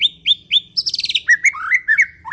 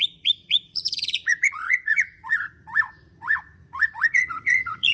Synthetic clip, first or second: second